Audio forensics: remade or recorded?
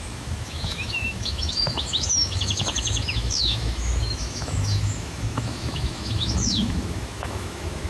remade